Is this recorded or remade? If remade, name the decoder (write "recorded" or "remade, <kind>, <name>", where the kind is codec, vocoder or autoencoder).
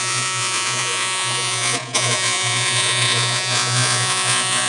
remade, vocoder, Vocos